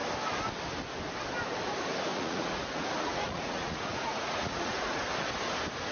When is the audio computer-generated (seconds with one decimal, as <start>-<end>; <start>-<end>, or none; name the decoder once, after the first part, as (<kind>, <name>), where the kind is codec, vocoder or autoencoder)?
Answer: 2.1-5.0 (vocoder, Vocos)